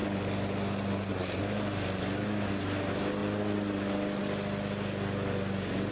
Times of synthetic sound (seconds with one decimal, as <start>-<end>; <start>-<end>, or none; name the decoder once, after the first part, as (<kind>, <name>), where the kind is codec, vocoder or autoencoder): none

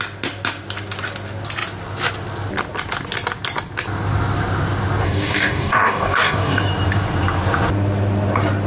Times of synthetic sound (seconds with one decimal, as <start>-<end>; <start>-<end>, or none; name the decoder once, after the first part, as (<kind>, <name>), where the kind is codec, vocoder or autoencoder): 5.0-6.7 (codec, DAC)

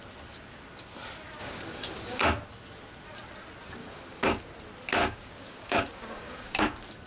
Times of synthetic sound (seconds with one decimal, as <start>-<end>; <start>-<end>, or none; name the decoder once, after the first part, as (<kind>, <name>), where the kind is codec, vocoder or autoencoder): 1.4-2.2 (codec, DAC); 3.8-4.4; 5.0-6.6